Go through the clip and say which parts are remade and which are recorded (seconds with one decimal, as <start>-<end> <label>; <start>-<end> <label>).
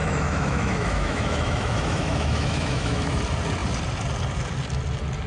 0.0-3.2 remade; 3.2-5.3 recorded